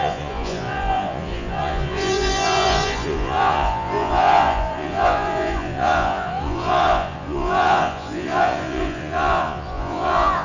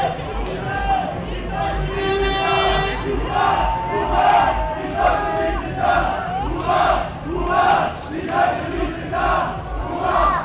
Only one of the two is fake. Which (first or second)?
first